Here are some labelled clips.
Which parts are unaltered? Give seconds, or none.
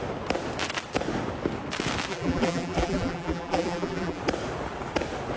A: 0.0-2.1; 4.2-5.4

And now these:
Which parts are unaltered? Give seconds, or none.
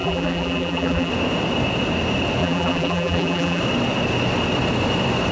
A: 1.1-2.4; 3.6-5.3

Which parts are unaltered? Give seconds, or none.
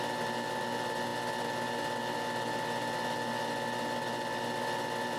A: 0.0-5.2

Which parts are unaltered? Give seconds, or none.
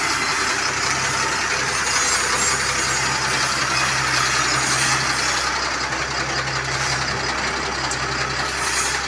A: 0.0-9.1